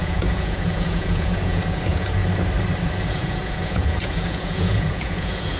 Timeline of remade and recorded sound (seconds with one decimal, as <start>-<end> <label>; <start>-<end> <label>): 0.0-2.2 remade; 2.2-3.1 recorded; 3.1-5.6 remade